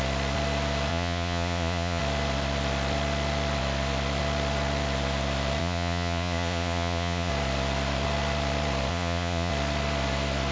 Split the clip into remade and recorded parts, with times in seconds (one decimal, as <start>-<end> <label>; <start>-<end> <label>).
0.0-0.9 recorded; 0.9-2.0 remade; 2.0-5.6 recorded; 5.6-7.3 remade; 7.3-8.9 recorded; 8.9-9.5 remade; 9.5-10.5 recorded